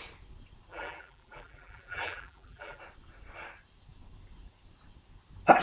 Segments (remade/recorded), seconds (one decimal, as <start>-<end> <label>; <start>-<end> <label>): 0.0-0.7 recorded; 0.7-2.8 remade; 2.8-5.6 recorded